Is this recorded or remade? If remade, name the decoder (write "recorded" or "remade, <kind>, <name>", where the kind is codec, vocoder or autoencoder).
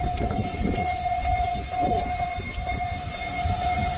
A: remade, vocoder, Vocos